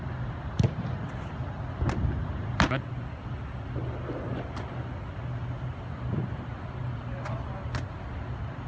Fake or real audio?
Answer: real